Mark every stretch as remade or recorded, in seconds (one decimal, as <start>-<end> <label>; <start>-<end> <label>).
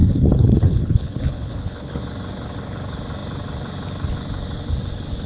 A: 0.0-2.0 remade; 2.0-5.3 recorded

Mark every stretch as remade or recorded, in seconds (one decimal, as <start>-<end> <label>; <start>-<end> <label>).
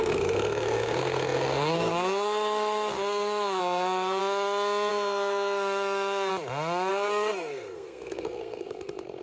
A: 0.0-4.2 remade; 4.2-4.9 recorded; 4.9-6.3 remade; 6.3-6.9 recorded; 6.9-9.2 remade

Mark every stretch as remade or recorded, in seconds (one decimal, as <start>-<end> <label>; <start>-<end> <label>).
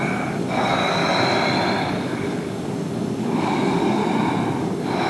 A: 0.0-1.0 remade; 1.0-1.8 recorded; 1.8-4.0 remade; 4.0-4.6 recorded; 4.6-5.1 remade